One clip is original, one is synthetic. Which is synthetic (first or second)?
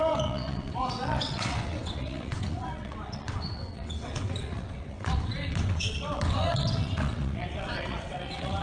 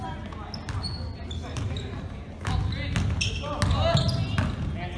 first